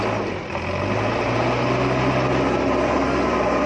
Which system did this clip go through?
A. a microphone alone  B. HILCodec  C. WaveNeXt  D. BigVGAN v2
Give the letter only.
A